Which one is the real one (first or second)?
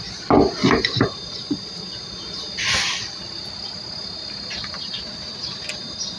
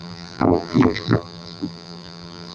first